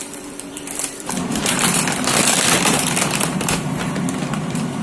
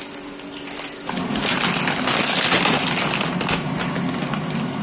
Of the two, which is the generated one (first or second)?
first